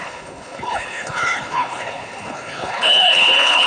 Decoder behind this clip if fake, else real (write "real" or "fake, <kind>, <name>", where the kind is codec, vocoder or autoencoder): fake, codec, HILCodec